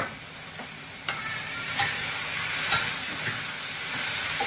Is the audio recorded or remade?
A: recorded